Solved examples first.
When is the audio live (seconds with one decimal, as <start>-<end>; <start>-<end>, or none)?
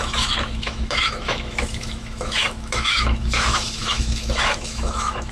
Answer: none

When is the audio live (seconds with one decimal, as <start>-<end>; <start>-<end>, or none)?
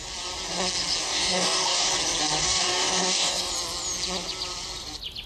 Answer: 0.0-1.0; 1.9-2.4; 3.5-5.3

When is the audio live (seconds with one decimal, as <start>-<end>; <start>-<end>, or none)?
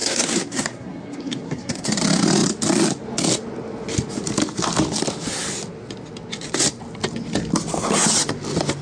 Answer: 1.9-8.8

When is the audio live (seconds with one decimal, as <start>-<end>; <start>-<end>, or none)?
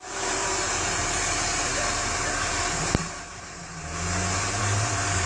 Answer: 1.7-3.3; 3.7-4.6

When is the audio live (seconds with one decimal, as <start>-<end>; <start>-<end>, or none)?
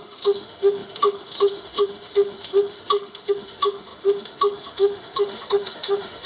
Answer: none